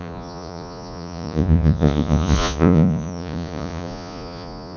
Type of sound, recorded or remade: remade